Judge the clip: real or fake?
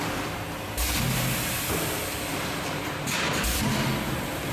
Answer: real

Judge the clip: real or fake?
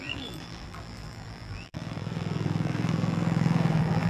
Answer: fake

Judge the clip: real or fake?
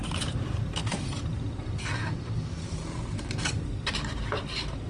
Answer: fake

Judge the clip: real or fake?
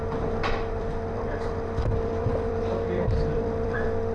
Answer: fake